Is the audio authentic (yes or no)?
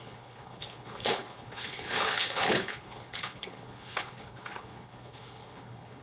no